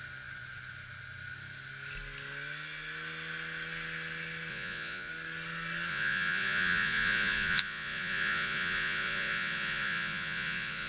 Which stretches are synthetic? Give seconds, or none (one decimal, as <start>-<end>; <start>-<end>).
4.5-5.1; 5.9-10.9